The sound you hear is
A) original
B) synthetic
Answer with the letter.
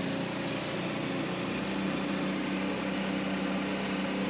A